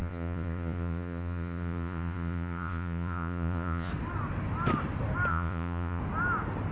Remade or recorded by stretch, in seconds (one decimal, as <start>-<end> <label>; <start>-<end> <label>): 0.0-3.9 remade; 3.9-5.3 recorded; 5.3-6.0 remade; 6.0-6.7 recorded